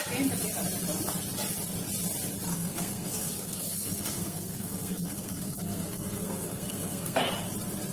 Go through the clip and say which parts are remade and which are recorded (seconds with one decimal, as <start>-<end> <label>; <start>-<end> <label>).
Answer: 0.0-2.5 recorded; 2.5-7.2 remade; 7.2-7.9 recorded